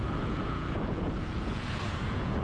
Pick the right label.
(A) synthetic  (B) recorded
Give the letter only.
A